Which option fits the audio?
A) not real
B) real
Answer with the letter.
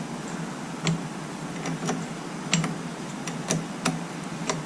B